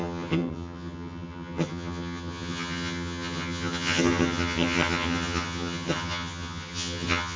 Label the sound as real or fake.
fake